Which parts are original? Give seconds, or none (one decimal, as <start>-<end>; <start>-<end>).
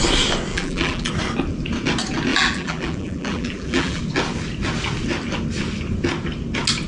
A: 0.0-0.5; 1.1-2.3; 4.0-6.9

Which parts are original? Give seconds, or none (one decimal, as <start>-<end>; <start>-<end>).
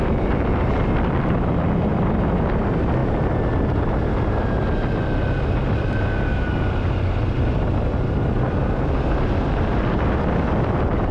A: 0.0-11.1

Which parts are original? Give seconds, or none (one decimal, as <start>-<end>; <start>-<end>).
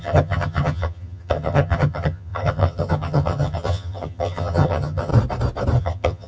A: 5.1-5.8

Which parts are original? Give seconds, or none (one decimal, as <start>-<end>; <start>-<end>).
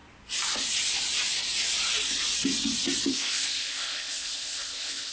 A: 0.0-3.1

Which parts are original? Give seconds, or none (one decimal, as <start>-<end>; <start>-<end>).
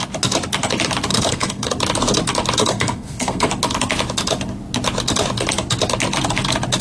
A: 0.0-1.1; 1.7-2.6; 3.5-6.8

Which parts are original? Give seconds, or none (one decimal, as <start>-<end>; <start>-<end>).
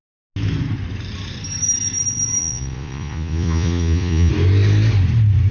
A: 0.0-2.4; 4.3-5.5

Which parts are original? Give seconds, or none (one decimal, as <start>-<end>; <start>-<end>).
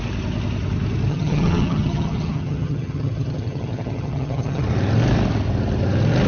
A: 0.0-1.1; 4.6-6.3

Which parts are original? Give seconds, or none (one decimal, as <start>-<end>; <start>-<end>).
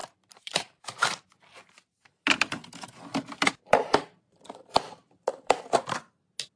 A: 1.2-3.6; 5.6-6.6